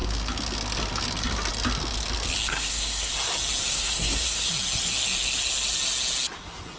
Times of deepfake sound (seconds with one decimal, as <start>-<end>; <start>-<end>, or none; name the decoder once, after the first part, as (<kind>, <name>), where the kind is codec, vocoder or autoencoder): 2.5-3.1 (codec, SNAC); 3.7-4.5